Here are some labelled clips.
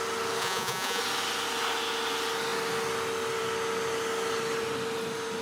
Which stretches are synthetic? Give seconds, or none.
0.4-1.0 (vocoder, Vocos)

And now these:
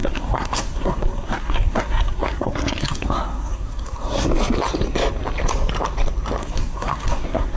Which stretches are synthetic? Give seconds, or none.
0.0-4.3 (codec, SNAC); 6.4-7.6